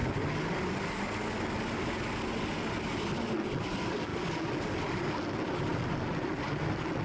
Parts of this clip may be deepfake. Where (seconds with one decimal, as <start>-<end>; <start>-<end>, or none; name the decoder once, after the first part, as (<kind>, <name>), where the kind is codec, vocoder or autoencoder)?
none